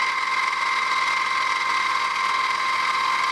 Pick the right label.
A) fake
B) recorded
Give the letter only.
B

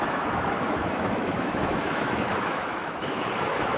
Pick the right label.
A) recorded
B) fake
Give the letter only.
B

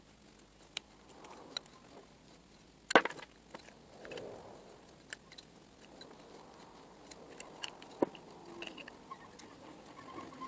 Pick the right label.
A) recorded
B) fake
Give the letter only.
A